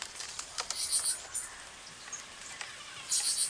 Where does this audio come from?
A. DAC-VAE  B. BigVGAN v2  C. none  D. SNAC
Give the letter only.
C